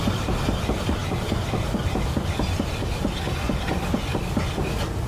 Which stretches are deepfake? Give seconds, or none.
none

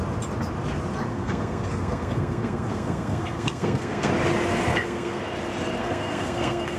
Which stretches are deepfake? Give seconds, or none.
1.1-4.1; 4.7-5.2; 5.8-6.8

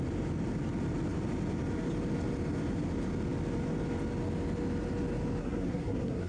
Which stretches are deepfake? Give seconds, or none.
5.4-6.3

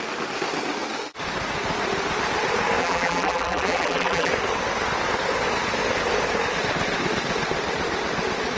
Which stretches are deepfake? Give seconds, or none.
2.8-4.3

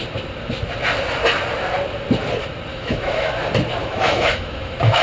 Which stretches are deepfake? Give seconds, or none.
2.7-3.3; 3.8-5.0

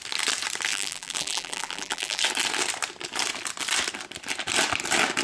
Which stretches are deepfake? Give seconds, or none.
0.7-2.2

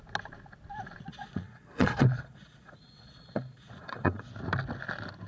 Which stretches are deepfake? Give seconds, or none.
1.1-4.3